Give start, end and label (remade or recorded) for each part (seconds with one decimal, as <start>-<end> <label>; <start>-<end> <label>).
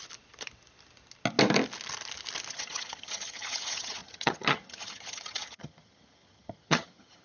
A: 0.0-2.5 recorded; 2.5-7.2 remade